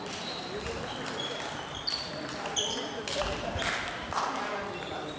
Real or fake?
real